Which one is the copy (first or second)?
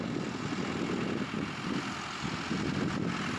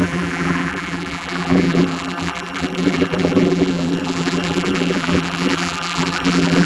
second